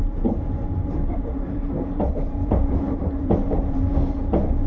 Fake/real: fake